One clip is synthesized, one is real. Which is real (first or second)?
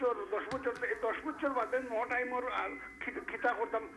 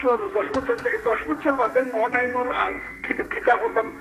first